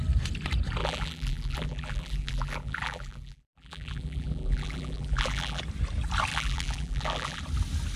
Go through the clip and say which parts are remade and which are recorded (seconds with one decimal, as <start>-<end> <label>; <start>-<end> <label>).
0.0-0.8 recorded; 0.8-5.6 remade; 5.6-6.3 recorded; 6.3-7.4 remade; 7.4-8.0 recorded